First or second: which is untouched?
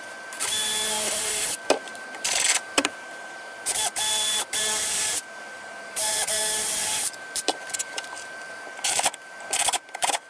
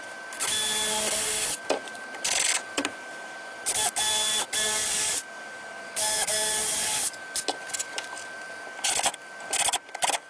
second